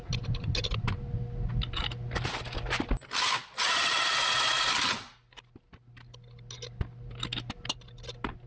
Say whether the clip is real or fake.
real